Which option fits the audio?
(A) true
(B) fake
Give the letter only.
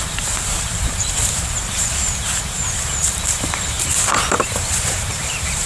B